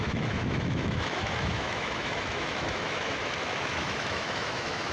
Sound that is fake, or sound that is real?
fake